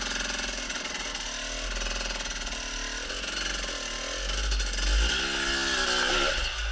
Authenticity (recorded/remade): recorded